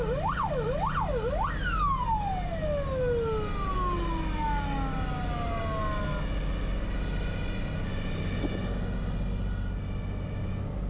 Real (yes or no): yes